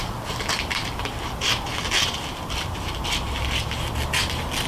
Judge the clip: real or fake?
real